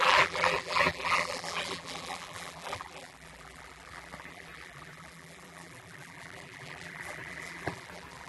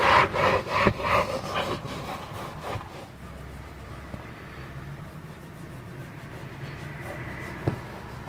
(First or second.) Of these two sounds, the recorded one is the second